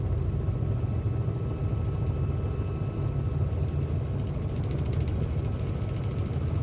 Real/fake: real